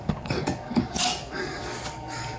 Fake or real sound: fake